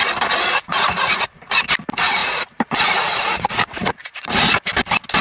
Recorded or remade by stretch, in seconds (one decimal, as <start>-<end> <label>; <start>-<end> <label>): 0.0-0.7 recorded; 0.7-1.3 remade; 1.3-2.2 recorded; 2.2-4.3 remade; 4.3-5.2 recorded